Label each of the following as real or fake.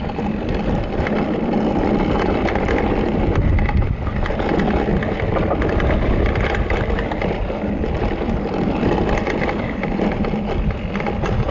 real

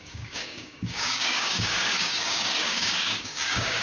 fake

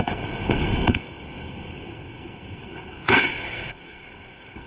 fake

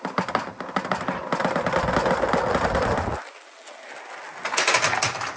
real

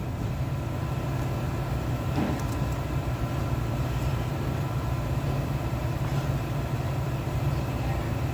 fake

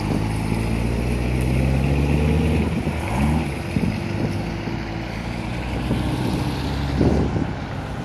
real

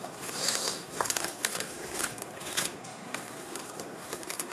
fake